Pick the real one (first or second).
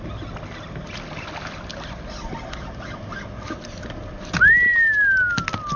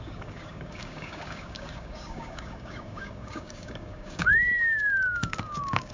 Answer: first